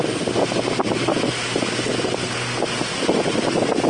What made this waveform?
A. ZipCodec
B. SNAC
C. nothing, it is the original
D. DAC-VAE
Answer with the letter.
C